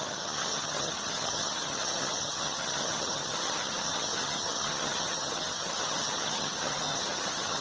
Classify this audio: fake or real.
fake